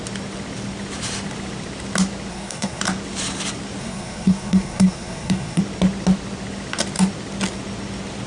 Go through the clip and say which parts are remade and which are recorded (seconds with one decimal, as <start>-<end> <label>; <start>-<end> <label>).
0.0-2.3 recorded; 2.3-2.8 remade; 2.8-3.8 recorded; 3.8-5.6 remade; 5.6-8.3 recorded